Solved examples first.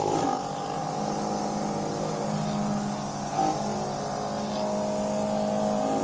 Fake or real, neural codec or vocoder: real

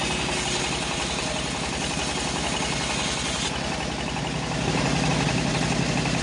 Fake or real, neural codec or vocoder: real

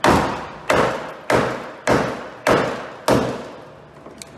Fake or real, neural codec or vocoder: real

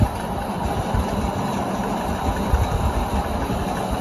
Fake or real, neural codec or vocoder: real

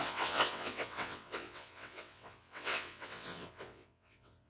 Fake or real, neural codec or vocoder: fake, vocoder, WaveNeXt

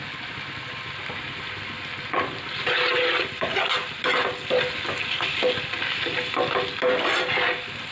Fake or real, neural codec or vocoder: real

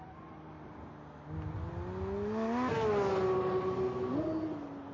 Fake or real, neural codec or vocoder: real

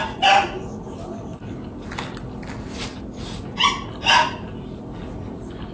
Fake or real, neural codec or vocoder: real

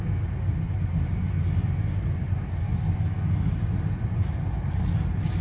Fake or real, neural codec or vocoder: real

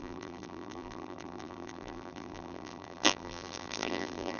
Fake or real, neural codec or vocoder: fake, vocoder, BigVGAN v2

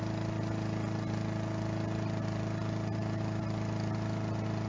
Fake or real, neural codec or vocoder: real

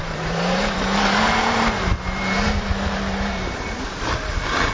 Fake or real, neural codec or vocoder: fake, vocoder, BigVGAN v2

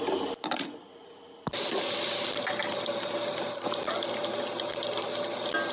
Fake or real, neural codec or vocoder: real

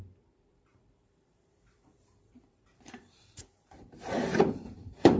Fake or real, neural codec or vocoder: fake, vocoder, BigVGAN v2